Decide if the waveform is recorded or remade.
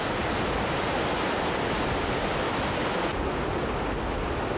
recorded